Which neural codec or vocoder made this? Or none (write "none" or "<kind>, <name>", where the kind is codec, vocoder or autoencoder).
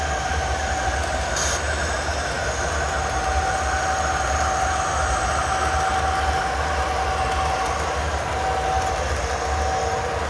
none